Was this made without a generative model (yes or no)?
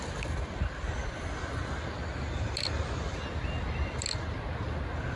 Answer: yes